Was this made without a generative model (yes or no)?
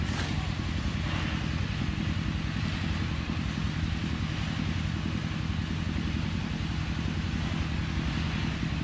yes